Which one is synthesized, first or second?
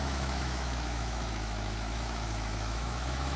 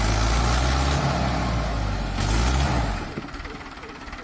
first